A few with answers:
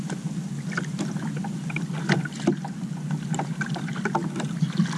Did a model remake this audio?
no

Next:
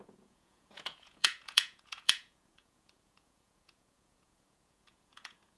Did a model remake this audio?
yes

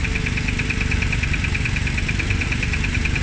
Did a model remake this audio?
no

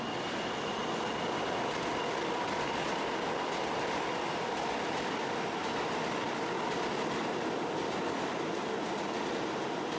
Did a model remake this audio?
no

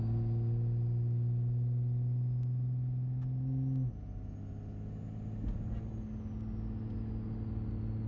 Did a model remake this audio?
no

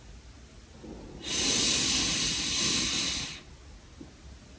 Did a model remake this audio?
no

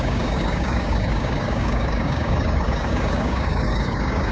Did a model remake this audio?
yes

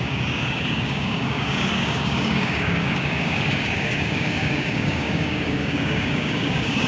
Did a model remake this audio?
yes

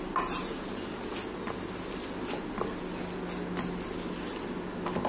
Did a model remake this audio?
no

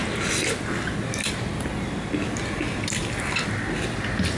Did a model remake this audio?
no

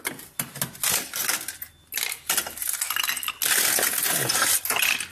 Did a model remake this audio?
no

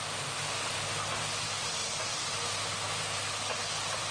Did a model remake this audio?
no